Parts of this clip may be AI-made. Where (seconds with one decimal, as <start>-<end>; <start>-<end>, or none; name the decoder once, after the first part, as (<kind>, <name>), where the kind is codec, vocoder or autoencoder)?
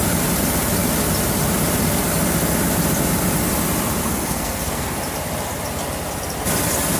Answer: 4.0-5.0 (codec, SNAC)